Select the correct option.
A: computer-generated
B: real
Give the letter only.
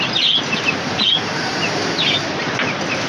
B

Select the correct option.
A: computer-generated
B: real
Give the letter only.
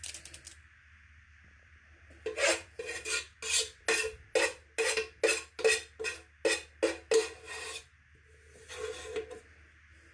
B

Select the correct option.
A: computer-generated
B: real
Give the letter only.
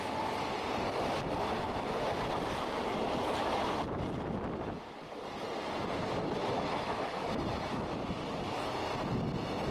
B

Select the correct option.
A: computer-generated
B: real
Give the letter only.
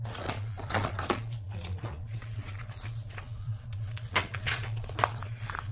A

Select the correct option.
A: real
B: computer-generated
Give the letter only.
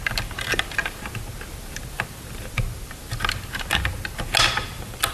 A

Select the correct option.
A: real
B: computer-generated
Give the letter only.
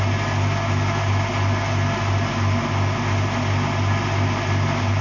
A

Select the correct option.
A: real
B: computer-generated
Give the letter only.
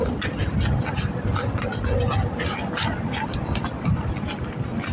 A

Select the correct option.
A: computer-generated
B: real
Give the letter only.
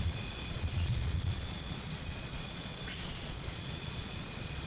A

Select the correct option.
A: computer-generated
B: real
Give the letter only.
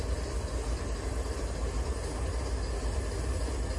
B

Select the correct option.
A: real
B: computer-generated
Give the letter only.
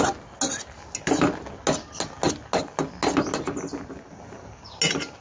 A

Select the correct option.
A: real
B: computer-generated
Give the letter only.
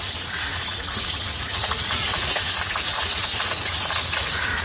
B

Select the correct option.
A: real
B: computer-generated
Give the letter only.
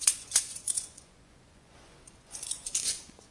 B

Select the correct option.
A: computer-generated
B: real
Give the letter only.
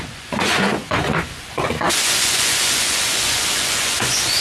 A